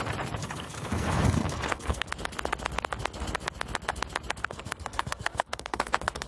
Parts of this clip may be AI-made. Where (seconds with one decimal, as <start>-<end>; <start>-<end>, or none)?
0.4-2.1; 4.4-6.3